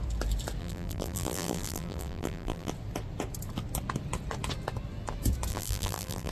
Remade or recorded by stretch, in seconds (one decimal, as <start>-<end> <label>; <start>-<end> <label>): 0.0-0.6 recorded; 0.6-2.7 remade; 2.7-5.5 recorded; 5.5-6.3 remade